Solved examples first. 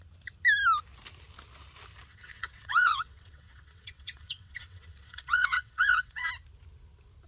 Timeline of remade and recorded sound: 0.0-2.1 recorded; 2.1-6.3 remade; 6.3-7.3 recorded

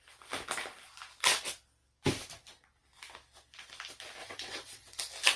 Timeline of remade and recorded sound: 0.0-4.2 recorded; 4.2-5.0 remade; 5.0-5.4 recorded

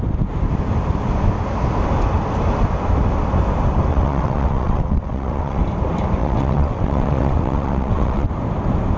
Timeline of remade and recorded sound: 0.0-3.9 recorded; 3.9-5.6 remade; 5.6-6.2 recorded; 6.2-8.3 remade; 8.3-9.0 recorded

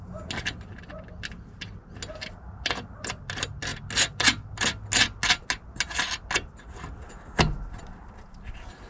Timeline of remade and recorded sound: 0.0-8.9 recorded

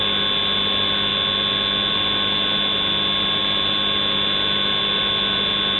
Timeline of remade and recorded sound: 0.0-5.8 recorded

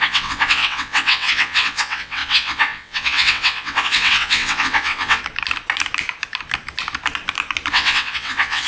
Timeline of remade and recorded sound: 0.0-5.2 remade; 5.2-7.7 recorded; 7.7-8.7 remade

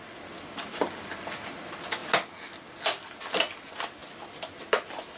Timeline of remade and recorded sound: 0.0-5.2 recorded

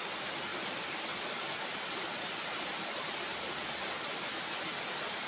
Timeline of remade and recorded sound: 0.0-5.3 recorded